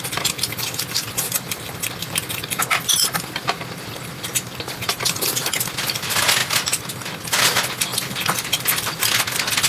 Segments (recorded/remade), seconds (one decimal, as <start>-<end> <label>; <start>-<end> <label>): 0.0-9.7 recorded